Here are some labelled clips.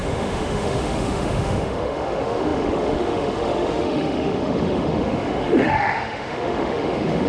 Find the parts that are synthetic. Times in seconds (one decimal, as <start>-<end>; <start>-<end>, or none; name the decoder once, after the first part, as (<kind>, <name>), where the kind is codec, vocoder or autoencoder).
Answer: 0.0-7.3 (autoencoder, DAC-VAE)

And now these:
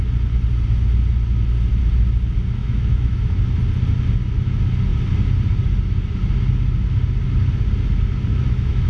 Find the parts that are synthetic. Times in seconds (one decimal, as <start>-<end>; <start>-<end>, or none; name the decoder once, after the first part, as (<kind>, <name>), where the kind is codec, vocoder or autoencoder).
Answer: 2.6-3.4 (autoencoder, DAC-VAE); 8.3-8.9

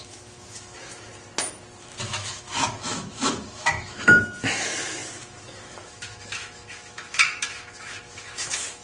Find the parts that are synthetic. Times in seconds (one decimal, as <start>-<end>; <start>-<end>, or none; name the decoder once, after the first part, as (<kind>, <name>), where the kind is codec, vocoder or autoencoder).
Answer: 0.0-1.1 (autoencoder, DAC-VAE); 1.8-8.8

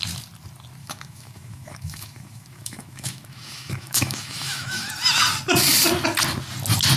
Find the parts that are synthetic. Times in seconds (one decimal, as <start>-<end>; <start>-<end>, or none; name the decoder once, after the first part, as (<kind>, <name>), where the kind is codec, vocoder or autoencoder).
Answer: 0.8-4.9 (autoencoder, DAC-VAE)

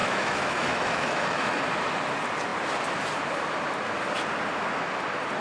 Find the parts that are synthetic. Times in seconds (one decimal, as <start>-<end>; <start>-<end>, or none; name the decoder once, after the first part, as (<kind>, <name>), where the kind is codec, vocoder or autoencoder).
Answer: 0.0-1.6 (autoencoder, DAC-VAE)